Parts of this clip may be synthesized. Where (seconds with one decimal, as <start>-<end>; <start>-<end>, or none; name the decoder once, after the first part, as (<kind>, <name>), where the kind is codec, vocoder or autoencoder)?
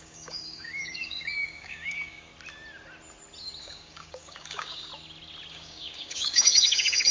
0.0-2.3 (codec, DAC); 3.6-4.9; 5.5-7.1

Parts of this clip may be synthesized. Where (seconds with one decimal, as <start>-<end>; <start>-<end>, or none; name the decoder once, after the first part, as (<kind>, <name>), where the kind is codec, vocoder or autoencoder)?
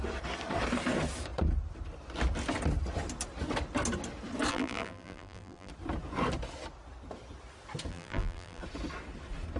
4.5-5.7 (vocoder, BigVGAN v2); 7.9-8.6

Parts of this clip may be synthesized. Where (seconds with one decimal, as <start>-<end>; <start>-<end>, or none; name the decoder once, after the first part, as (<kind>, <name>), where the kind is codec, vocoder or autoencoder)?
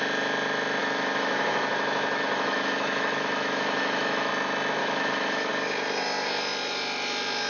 0.8-4.3 (autoencoder, DAC-VAE); 4.8-5.5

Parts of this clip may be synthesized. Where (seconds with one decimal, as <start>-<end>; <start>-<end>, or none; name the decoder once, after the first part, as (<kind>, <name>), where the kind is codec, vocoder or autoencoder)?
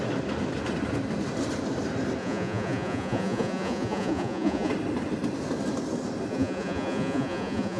2.2-4.7 (vocoder, Vocos); 6.3-7.8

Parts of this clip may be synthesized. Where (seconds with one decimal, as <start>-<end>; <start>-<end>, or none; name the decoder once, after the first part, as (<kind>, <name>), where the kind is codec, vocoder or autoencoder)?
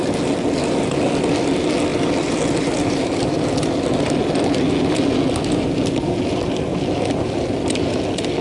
1.9-3.7 (vocoder, BigVGAN v2); 6.7-8.0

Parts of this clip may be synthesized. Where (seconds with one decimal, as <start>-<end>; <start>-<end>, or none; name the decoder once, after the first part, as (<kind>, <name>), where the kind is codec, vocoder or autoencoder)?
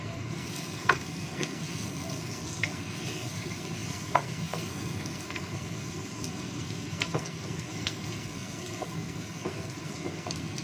0.0-10.6 (codec, SNAC)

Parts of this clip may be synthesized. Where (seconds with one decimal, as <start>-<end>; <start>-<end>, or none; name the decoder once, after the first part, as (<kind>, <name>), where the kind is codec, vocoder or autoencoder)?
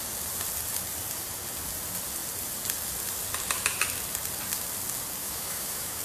5.2-6.0 (autoencoder, DAC-VAE)